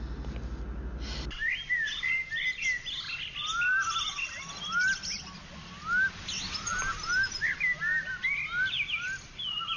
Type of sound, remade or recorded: recorded